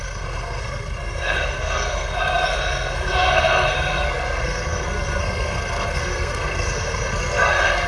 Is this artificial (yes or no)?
yes